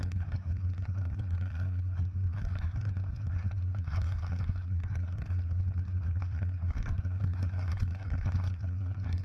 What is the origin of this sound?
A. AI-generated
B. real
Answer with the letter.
A